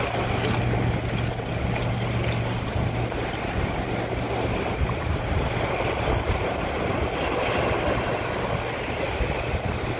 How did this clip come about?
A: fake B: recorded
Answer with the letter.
B